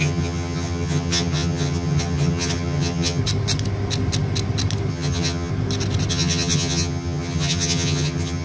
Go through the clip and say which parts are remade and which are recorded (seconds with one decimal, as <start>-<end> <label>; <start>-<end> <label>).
0.0-3.2 remade; 3.2-4.9 recorded; 4.9-5.5 remade; 5.5-6.1 recorded; 6.1-8.4 remade